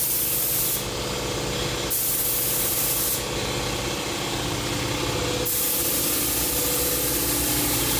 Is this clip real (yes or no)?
yes